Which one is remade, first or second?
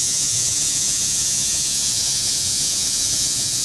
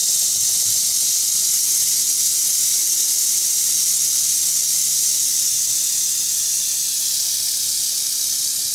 first